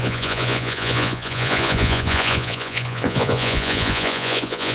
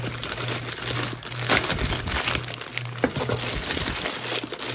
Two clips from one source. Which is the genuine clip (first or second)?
second